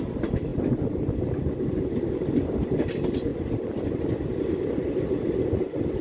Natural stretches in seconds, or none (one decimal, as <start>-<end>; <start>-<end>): 0.0-6.0